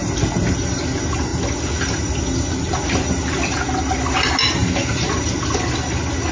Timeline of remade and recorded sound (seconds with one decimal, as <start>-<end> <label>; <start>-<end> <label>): 0.0-6.3 recorded